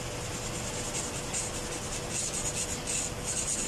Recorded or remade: recorded